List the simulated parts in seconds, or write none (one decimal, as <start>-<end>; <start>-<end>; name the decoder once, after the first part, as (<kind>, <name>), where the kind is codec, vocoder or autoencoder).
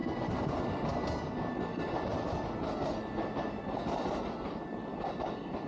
0.0-0.6 (vocoder, BigVGAN v2)